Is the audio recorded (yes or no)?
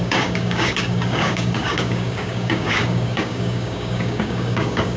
no